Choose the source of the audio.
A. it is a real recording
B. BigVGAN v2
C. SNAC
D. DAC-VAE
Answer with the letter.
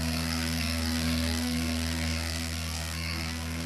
C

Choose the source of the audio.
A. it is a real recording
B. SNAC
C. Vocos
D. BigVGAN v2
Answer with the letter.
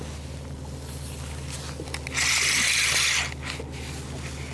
A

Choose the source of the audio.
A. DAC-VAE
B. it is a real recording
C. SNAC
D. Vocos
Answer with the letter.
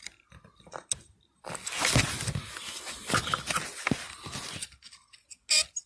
B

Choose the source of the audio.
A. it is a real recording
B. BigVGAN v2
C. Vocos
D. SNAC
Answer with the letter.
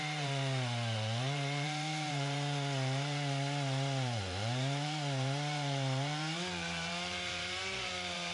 B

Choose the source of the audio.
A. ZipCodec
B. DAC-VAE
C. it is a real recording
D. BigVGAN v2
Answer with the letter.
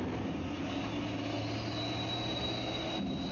C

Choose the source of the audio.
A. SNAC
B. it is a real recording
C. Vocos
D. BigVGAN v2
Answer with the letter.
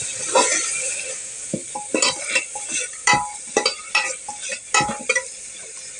B